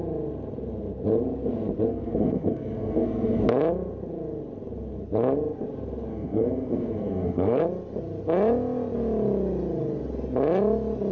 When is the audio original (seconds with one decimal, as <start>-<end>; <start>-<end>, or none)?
0.0-1.9; 3.4-6.1; 7.6-11.1